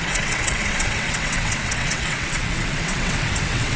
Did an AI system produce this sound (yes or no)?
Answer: yes